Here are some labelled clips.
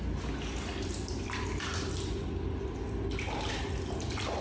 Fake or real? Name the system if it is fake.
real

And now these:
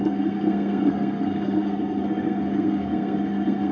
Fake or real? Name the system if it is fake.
fake, codec, SNAC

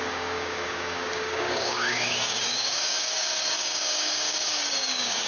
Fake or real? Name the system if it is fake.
fake, codec, DAC